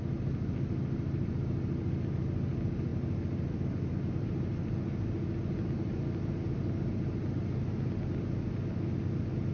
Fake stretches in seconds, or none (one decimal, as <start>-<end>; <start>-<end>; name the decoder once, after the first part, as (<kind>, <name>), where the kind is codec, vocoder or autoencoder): none